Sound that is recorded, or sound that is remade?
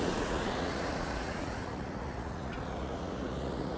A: remade